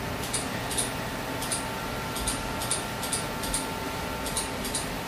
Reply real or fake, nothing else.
real